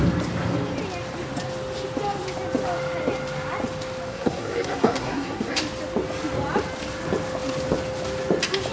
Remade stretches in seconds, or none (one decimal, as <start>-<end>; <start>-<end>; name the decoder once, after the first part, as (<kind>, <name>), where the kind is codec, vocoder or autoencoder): 4.1-5.6 (codec, SNAC)